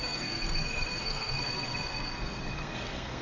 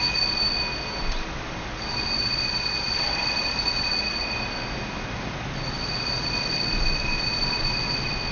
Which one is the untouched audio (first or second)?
second